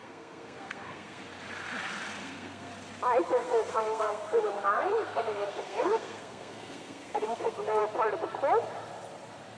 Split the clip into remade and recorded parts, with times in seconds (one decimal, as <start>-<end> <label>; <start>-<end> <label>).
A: 0.0-1.2 remade; 1.2-2.2 recorded; 2.2-2.7 remade; 2.7-3.4 recorded; 3.4-7.8 remade; 7.8-9.6 recorded